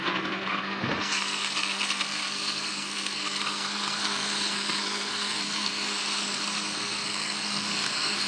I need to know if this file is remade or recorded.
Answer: remade